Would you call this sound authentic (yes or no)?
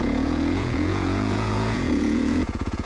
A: no